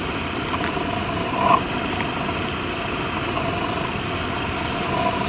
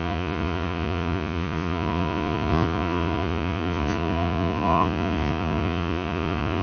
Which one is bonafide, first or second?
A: first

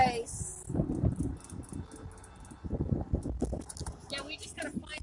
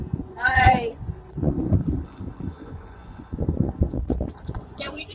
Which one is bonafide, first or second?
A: first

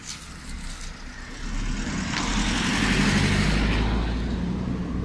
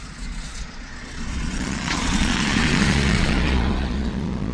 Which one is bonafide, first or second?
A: first